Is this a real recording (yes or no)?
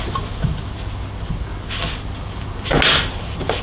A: yes